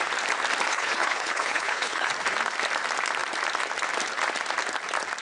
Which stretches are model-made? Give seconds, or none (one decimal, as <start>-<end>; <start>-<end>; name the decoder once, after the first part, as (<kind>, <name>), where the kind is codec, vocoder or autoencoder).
0.7-2.1 (codec, HILCodec)

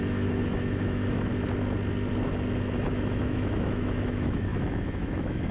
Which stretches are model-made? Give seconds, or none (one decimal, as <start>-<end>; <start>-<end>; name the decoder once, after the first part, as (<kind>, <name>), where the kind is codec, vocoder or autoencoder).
0.0-1.3 (autoencoder, DAC-VAE); 2.9-5.5

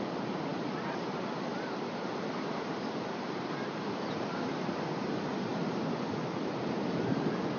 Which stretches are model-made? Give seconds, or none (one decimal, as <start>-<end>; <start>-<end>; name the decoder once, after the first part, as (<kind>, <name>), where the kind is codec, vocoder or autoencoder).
0.5-5.1 (vocoder, BigVGAN v2); 5.5-7.6

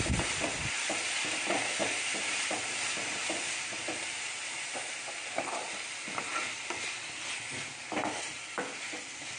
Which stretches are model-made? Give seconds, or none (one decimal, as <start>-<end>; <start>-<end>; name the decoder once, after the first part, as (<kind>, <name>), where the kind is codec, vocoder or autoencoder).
none

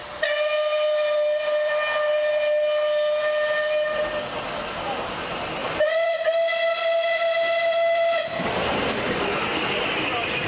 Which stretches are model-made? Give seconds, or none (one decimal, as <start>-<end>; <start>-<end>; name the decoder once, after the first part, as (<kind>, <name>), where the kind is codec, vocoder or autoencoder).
5.6-6.2 (vocoder, BigVGAN v2)